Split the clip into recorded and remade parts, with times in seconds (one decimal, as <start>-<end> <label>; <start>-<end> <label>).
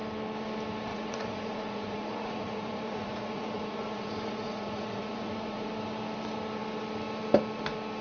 0.0-0.9 recorded; 0.9-5.7 remade; 5.7-8.0 recorded